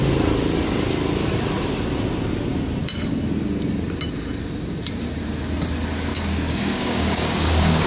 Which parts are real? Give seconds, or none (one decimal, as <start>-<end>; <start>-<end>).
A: 0.0-6.1